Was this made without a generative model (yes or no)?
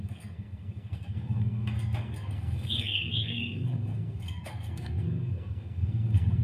no